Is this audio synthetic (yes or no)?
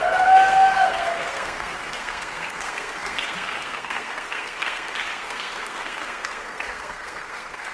yes